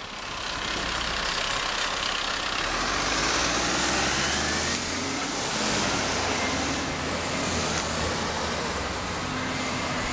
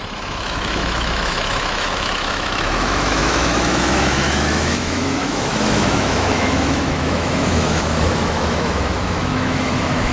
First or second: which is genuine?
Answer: first